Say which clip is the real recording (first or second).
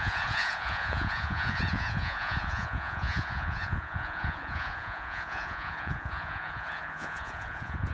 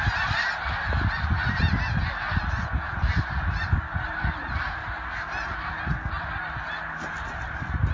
second